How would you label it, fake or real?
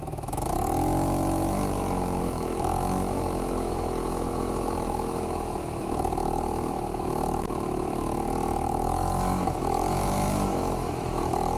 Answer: fake